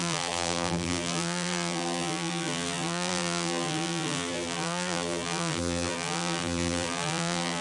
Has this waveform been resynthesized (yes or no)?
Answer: yes